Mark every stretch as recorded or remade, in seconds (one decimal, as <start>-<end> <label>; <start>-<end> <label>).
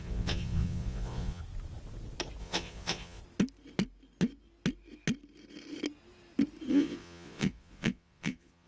0.0-1.4 remade; 1.4-2.4 recorded; 2.4-3.2 remade; 3.2-6.7 recorded; 6.7-8.7 remade